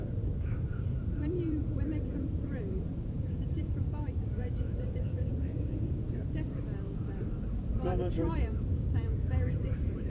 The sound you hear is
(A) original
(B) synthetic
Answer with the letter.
B